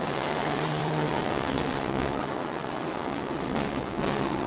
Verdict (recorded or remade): remade